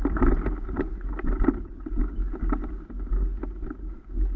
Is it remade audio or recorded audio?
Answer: recorded